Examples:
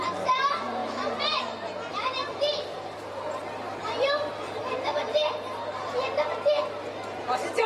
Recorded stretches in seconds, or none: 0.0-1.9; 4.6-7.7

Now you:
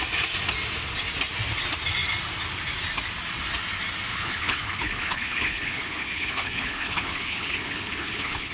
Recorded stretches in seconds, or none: 0.0-4.1

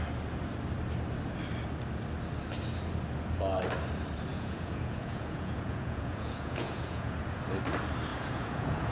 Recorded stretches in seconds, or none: 0.0-4.3; 7.4-8.1